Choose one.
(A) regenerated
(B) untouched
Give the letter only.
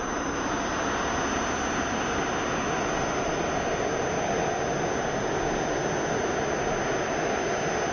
B